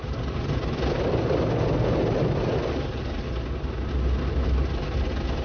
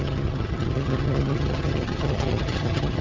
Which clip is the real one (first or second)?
first